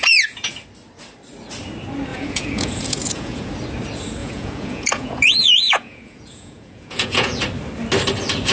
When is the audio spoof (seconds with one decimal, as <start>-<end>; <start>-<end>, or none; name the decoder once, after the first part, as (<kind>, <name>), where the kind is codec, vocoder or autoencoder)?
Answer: 0.0-0.5 (vocoder, Vocos); 2.1-3.5; 4.2-7.4